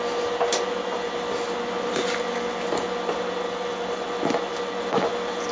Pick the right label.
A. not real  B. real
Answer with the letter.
B